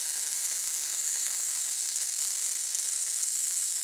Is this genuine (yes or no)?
no